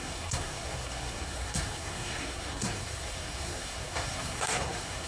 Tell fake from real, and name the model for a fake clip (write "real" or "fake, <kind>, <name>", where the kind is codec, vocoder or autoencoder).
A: fake, codec, SNAC